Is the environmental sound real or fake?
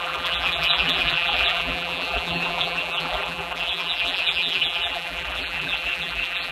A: fake